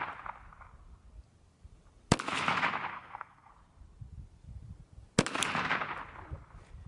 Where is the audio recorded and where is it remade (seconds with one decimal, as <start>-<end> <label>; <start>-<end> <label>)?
0.0-2.9 recorded; 2.9-3.5 remade; 3.5-6.9 recorded